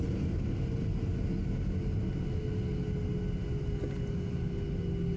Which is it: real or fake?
real